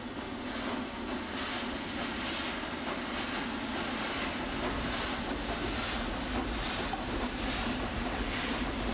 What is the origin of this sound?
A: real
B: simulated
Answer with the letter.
A